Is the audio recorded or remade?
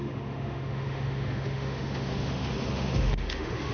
remade